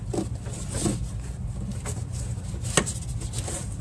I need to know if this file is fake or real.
real